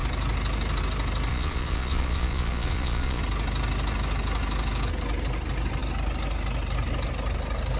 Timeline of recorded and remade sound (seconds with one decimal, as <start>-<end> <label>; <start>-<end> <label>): 0.0-1.3 recorded; 1.3-3.2 remade; 3.2-7.8 recorded